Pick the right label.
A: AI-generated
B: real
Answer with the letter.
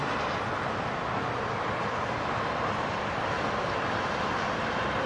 B